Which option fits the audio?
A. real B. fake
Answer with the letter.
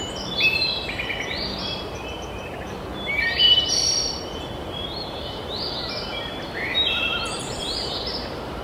B